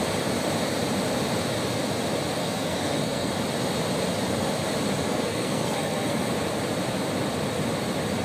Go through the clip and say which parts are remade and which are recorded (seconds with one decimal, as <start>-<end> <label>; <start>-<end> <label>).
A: 0.0-2.4 recorded; 2.4-3.3 remade; 3.3-5.1 recorded; 5.1-6.3 remade; 6.3-8.2 recorded